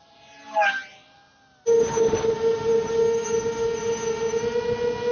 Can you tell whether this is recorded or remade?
recorded